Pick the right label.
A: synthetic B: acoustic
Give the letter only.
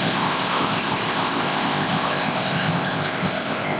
A